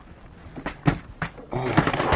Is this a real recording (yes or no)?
yes